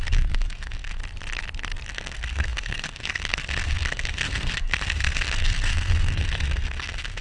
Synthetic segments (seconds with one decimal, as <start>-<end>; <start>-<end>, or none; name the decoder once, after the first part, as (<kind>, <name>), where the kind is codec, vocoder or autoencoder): 0.0-1.0 (codec, SNAC); 1.9-7.2